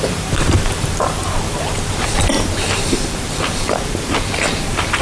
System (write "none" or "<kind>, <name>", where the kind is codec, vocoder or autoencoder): vocoder, BigVGAN v2